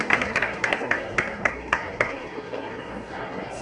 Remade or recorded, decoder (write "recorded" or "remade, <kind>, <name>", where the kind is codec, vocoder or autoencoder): remade, codec, SNAC